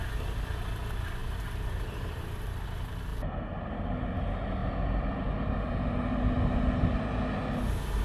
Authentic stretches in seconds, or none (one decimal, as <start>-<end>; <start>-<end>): 0.0-1.2; 2.2-8.0